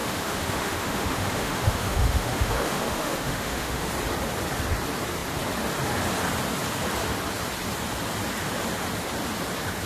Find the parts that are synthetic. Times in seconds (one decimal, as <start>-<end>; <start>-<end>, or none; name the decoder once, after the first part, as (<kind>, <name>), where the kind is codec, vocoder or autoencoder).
0.0-3.9 (autoencoder, DAC-VAE)